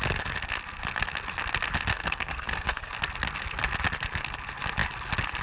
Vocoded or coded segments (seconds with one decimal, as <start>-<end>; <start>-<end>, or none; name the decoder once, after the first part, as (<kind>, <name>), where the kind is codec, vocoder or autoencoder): 1.9-2.9 (codec, SNAC)